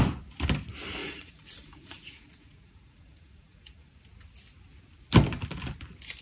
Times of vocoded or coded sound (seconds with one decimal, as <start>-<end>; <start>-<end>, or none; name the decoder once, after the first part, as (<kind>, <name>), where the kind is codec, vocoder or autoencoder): 1.0-4.0 (vocoder, Vocos)